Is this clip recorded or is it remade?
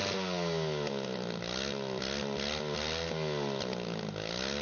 recorded